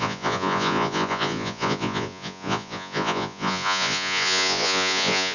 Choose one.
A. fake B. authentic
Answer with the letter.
A